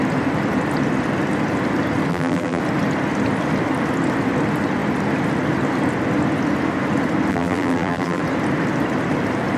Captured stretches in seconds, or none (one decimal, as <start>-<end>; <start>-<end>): 0.0-2.1; 2.6-7.3; 8.2-9.6